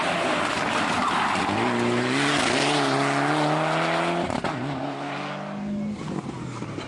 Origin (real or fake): real